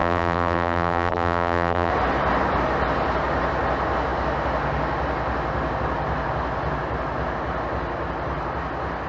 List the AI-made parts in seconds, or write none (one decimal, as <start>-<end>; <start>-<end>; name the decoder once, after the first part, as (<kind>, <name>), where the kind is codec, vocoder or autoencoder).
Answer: 0.0-1.9 (vocoder, BigVGAN v2)